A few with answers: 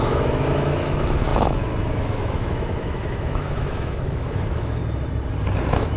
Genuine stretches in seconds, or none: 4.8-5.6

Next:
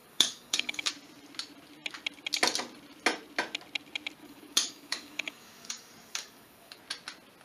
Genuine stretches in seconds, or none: 0.9-4.2; 6.8-7.4

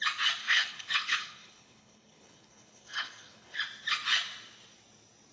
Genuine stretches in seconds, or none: 0.0-0.4; 3.6-5.3

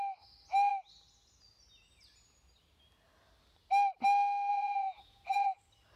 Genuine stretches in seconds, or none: 0.0-4.5; 5.6-6.0

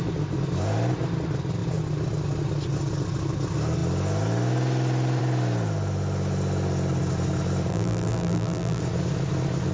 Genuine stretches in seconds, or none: 0.0-7.7; 8.8-9.7

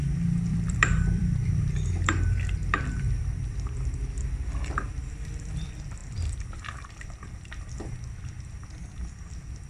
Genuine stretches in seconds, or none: 0.0-0.5; 5.0-9.7

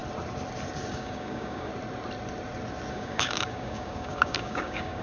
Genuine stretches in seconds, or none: 0.0-0.9; 1.7-2.9

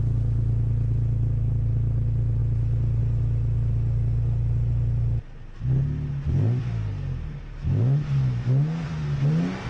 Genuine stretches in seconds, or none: 0.0-9.7